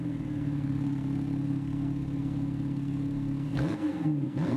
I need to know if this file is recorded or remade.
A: remade